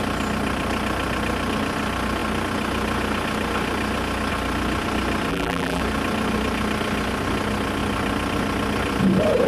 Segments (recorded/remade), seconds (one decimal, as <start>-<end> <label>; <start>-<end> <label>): 0.0-5.3 recorded; 5.3-5.8 remade; 5.8-9.5 recorded